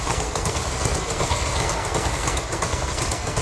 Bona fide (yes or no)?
no